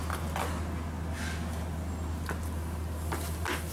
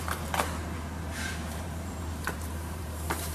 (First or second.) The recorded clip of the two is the first